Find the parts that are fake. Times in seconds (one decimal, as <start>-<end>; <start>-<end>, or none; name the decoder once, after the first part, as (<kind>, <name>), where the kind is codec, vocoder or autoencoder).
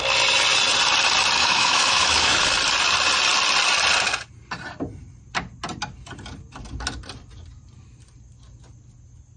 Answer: 1.4-2.4 (autoencoder, DAC-VAE)